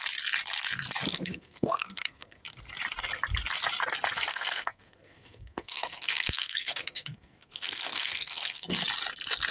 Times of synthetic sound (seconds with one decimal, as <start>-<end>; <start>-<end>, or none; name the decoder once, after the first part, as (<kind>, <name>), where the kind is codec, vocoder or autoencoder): 1.1-2.4 (codec, SNAC); 4.3-8.8